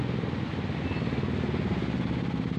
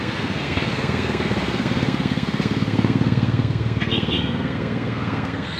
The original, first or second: first